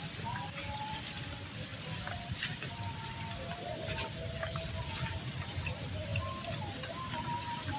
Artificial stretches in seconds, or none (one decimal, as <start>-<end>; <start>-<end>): none